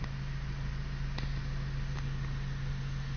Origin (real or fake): real